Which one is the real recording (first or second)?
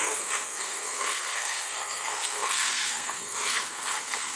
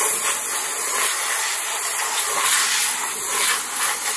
second